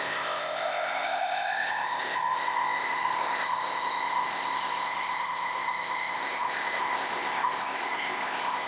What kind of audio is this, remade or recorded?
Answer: remade